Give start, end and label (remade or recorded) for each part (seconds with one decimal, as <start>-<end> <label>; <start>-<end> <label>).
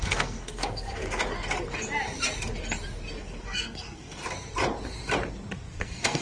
0.0-1.0 remade; 1.0-3.2 recorded; 3.2-4.2 remade; 4.2-5.7 recorded; 5.7-6.2 remade